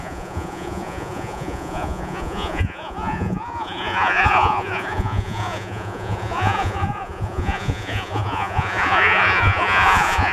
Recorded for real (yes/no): no